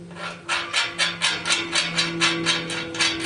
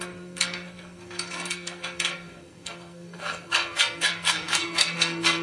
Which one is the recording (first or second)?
first